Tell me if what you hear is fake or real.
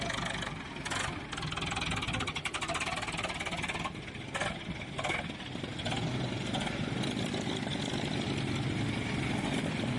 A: real